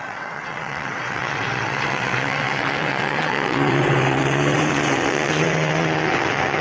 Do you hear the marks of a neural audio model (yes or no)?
yes